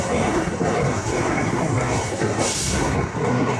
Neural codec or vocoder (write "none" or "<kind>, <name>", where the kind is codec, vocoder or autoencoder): codec, SNAC